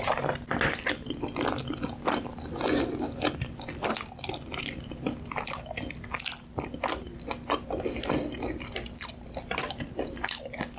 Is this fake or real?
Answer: real